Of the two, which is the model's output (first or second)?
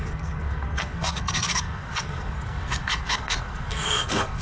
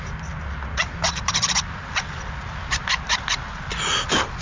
first